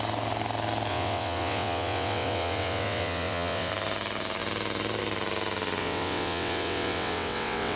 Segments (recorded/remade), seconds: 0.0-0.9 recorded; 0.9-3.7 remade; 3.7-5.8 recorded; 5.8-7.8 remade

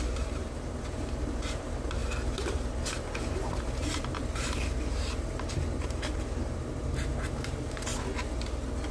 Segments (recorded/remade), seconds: 0.0-7.9 remade; 7.9-8.9 recorded

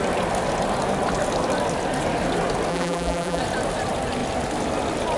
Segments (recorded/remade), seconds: 0.0-2.7 recorded; 2.7-3.4 remade; 3.4-5.2 recorded

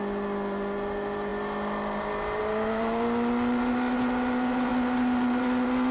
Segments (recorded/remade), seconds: 0.0-5.9 recorded

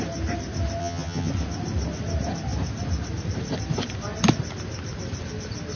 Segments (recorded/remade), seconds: 0.0-0.8 recorded; 0.8-1.3 remade; 1.3-5.8 recorded

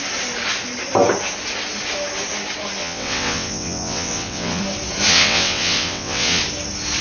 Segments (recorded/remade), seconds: 0.0-2.8 recorded; 2.8-4.6 remade; 4.6-5.1 recorded; 5.1-6.4 remade; 6.4-7.0 recorded

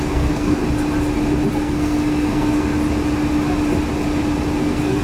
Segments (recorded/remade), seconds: 0.0-0.6 remade; 0.6-1.5 recorded; 1.5-2.7 remade; 2.7-4.6 recorded; 4.6-5.0 remade

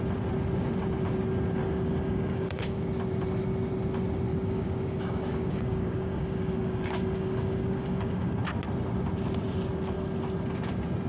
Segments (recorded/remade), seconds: 0.0-1.6 recorded; 1.6-2.9 remade; 2.9-4.3 recorded; 4.3-8.4 remade; 8.4-11.1 recorded